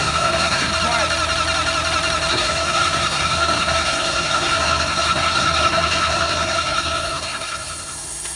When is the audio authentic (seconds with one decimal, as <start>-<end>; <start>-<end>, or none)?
0.7-2.3